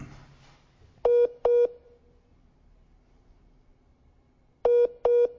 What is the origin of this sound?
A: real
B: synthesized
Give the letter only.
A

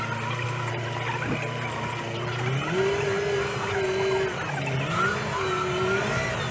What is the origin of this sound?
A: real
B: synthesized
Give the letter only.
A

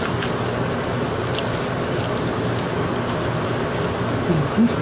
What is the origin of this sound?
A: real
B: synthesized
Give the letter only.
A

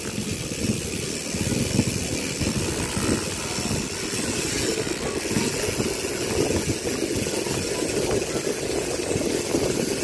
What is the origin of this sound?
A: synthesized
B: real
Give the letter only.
B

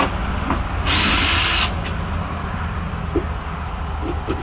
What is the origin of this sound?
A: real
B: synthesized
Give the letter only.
A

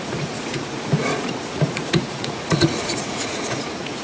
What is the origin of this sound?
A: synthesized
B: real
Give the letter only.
A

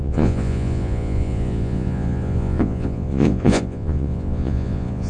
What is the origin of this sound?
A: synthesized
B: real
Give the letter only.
A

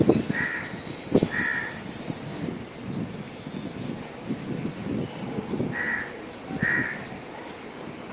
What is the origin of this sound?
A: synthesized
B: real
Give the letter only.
B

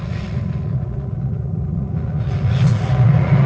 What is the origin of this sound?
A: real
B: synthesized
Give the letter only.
B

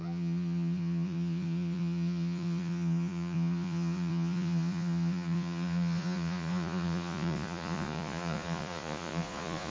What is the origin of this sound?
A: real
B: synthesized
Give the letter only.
B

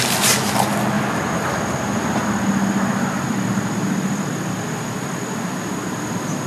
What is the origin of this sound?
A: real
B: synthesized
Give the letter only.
A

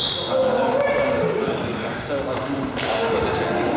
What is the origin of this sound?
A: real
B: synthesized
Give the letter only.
A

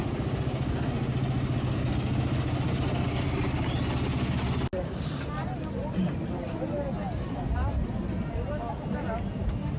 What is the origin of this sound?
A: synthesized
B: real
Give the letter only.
B